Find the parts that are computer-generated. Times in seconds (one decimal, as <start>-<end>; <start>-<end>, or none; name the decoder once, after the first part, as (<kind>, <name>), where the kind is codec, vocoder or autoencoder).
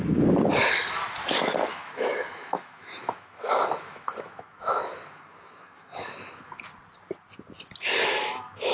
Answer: 1.7-6.6 (autoencoder, DAC-VAE); 8.0-8.7